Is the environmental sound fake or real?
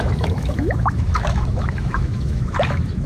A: fake